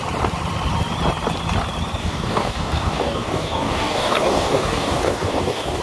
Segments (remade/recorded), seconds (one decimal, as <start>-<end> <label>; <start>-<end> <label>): 0.0-2.0 recorded; 2.0-5.8 remade